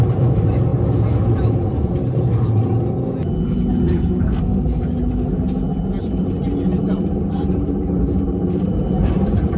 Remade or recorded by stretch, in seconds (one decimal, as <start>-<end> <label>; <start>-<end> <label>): 0.0-0.7 remade; 0.7-1.4 recorded; 1.4-2.3 remade; 2.3-6.0 recorded; 6.0-9.6 remade